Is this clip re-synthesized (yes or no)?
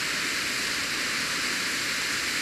no